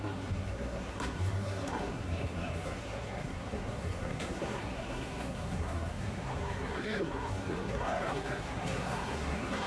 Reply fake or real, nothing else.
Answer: fake